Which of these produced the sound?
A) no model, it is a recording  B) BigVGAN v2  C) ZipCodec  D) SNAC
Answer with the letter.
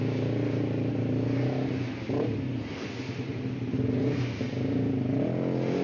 A